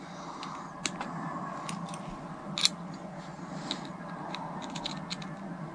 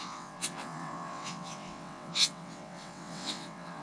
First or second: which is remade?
second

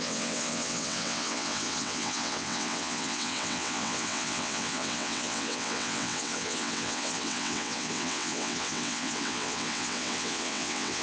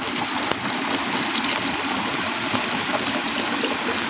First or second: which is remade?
first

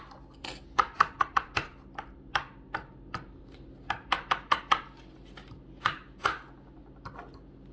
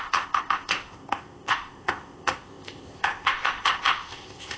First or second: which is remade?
second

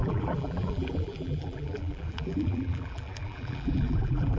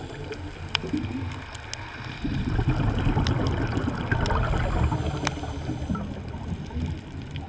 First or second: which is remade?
first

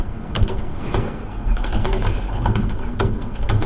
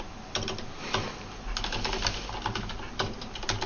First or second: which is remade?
first